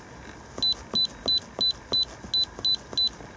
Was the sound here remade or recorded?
recorded